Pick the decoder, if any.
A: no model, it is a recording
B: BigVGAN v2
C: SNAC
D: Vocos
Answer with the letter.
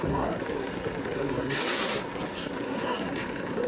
C